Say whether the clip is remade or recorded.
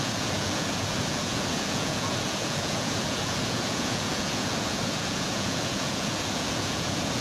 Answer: remade